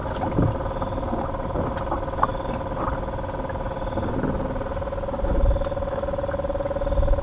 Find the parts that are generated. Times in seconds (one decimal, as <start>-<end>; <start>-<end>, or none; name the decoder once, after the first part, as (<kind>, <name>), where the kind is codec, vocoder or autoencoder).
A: none